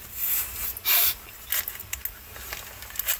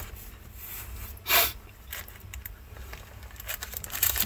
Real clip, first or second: first